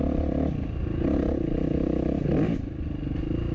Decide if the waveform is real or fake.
real